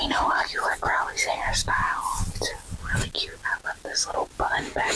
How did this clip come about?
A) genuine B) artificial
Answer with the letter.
A